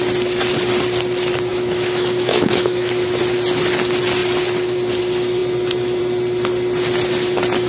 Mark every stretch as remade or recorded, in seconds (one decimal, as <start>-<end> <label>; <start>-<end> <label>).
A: 0.0-1.5 recorded; 1.5-3.2 remade; 3.2-7.7 recorded